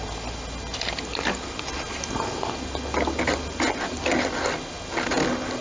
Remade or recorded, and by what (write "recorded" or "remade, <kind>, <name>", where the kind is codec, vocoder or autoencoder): recorded